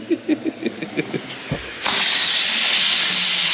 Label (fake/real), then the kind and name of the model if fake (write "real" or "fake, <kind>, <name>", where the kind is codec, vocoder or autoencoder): real